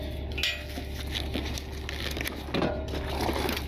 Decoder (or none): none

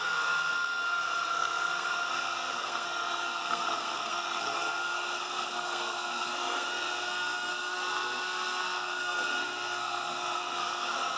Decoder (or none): codec, SNAC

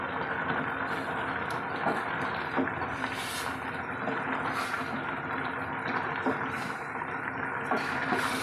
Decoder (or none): none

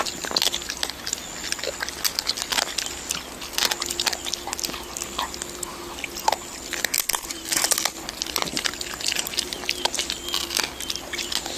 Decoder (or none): none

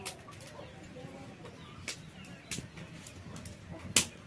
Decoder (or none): none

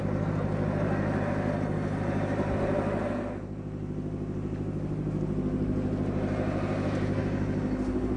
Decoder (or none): none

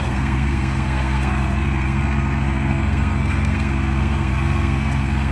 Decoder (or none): codec, SNAC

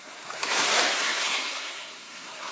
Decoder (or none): codec, SNAC